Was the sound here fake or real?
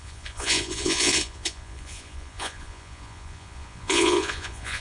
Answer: fake